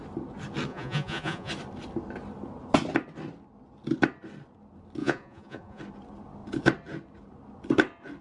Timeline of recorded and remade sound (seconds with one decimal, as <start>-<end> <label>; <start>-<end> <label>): 0.0-0.7 recorded; 0.7-1.5 remade; 1.5-5.0 recorded; 5.0-5.8 remade; 5.8-8.2 recorded